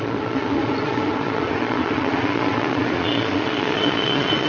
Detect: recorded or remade remade